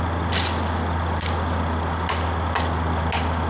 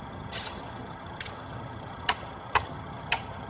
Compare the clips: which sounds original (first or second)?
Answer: first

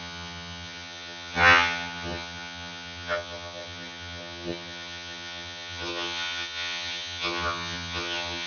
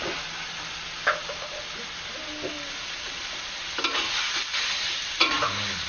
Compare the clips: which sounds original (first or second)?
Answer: second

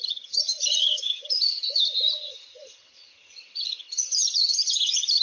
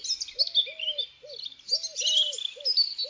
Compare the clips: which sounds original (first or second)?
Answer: second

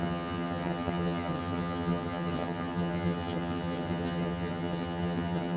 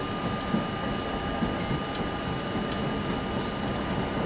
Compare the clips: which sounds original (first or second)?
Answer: second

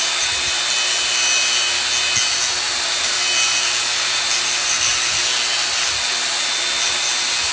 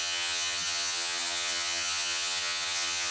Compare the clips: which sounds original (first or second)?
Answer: first